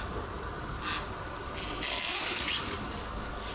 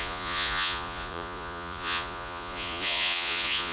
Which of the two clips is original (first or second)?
first